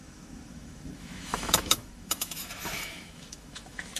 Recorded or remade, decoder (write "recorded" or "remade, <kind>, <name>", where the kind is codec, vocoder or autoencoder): remade, autoencoder, DAC-VAE